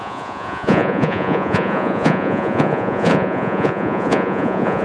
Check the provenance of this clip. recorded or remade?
remade